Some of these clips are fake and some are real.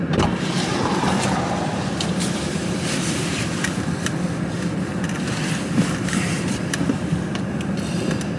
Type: fake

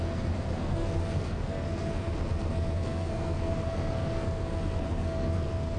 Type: fake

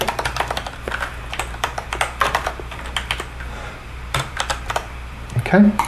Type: fake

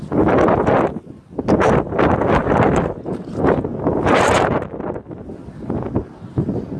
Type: real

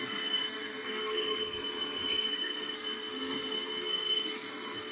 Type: fake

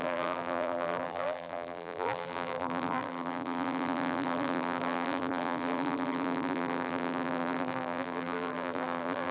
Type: fake